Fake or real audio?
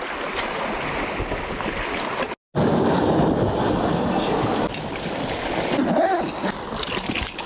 real